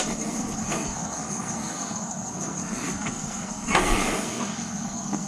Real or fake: fake